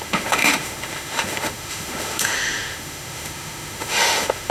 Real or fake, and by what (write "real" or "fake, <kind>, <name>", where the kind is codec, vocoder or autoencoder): fake, autoencoder, DAC-VAE